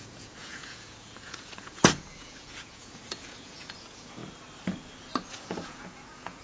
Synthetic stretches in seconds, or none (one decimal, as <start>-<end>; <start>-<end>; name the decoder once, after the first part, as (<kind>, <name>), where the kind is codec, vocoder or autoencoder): 0.0-4.2 (vocoder, Vocos); 5.3-6.4